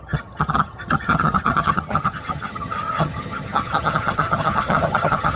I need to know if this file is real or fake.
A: fake